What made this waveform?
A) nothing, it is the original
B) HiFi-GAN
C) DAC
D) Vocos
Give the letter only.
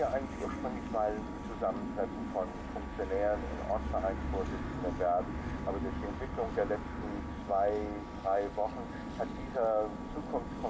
A